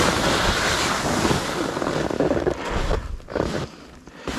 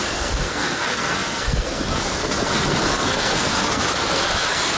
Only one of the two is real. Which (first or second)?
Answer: first